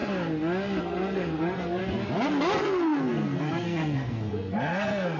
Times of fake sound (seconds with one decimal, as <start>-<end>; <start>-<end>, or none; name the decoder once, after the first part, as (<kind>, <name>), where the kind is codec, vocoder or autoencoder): 0.8-1.8 (codec, SNAC); 2.6-5.2